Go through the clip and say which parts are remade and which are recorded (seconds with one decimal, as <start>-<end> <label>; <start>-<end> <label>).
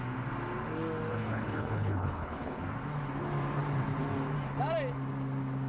0.0-1.1 recorded; 1.1-2.6 remade; 2.6-5.7 recorded